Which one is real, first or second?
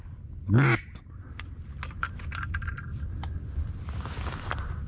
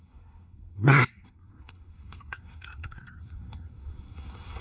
first